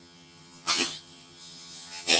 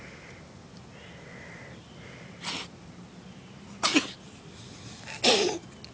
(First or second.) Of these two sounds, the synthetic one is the first